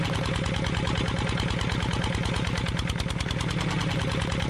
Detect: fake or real real